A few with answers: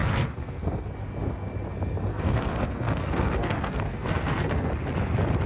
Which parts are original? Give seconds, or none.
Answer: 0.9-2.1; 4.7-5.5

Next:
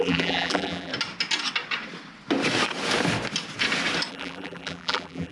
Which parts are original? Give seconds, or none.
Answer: 0.9-4.1

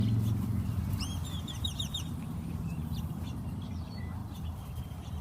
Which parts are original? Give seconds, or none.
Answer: 0.0-1.2; 3.7-4.2

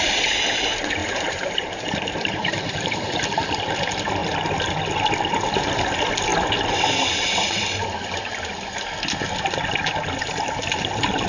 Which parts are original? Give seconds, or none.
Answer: 0.0-1.0; 3.3-11.3

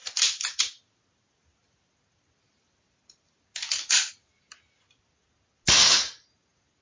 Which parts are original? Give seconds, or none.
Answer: 0.0-6.8

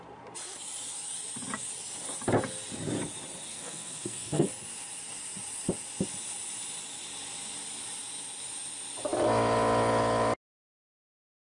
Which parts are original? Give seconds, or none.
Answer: 0.0-3.5; 4.5-11.4

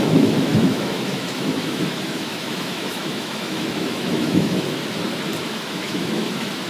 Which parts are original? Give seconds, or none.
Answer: 4.8-5.4

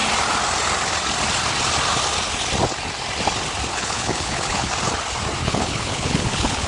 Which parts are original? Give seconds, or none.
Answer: 0.0-3.7; 4.7-5.4